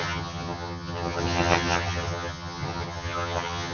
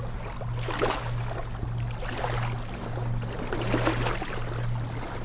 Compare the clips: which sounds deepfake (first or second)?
first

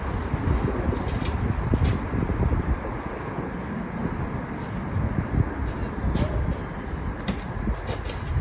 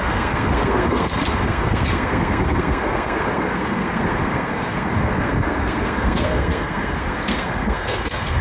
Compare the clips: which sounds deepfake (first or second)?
second